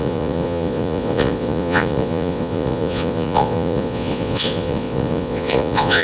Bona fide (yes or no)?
no